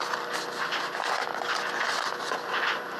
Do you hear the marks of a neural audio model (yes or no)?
no